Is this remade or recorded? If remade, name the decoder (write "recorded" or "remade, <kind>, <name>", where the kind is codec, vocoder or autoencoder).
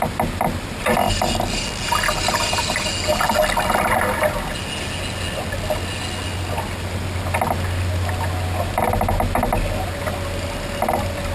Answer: recorded